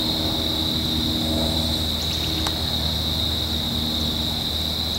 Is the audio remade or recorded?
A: recorded